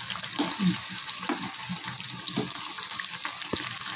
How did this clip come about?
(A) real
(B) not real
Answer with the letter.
A